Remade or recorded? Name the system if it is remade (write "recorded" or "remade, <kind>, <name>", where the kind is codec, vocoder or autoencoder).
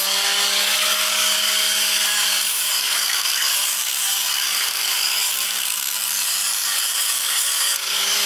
remade, codec, DAC